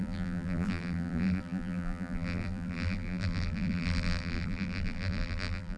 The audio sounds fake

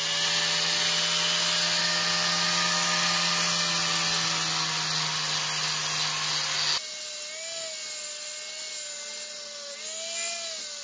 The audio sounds real